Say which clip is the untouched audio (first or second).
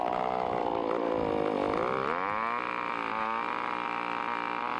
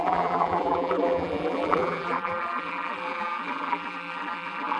first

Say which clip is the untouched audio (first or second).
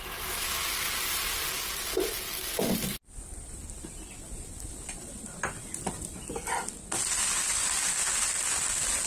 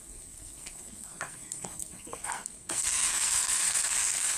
first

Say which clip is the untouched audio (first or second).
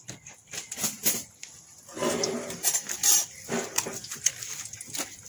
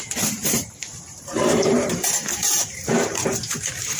first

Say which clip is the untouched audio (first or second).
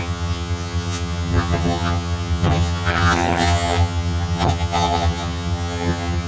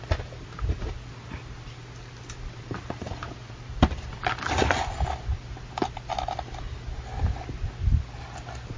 second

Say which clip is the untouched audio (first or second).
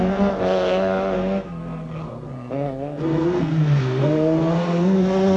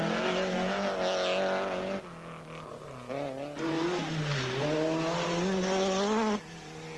second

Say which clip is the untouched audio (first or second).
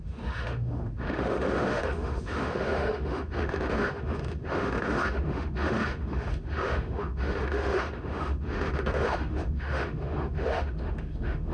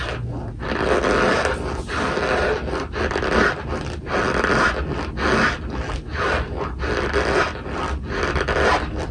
second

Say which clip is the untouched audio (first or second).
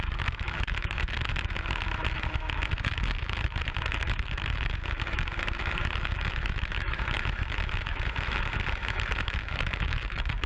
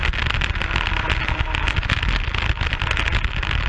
second